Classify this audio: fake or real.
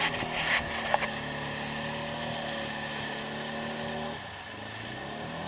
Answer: real